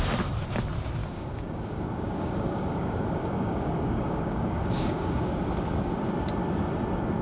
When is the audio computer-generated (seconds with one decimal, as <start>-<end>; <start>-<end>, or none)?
1.0-5.3